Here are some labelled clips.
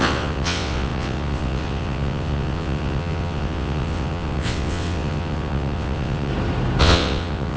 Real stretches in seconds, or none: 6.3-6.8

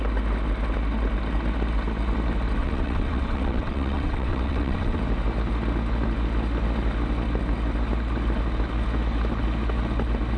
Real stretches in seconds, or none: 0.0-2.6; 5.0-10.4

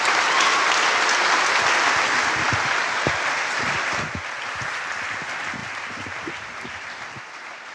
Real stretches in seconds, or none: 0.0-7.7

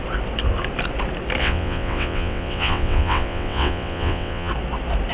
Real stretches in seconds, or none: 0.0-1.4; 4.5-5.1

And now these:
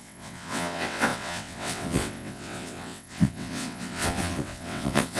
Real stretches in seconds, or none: none

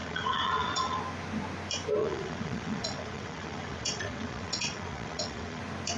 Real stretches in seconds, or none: 1.0-2.0; 5.6-6.0

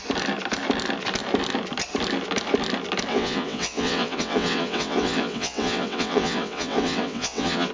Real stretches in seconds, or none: 0.0-3.1